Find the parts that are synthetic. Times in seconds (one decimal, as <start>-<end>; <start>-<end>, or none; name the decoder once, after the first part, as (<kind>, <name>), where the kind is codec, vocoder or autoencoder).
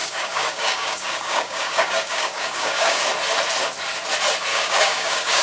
0.0-3.0 (codec, DAC); 4.5-5.4